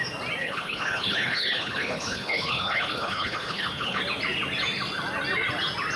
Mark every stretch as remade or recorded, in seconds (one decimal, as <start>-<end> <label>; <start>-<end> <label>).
0.0-0.4 recorded; 0.4-4.0 remade; 4.0-6.0 recorded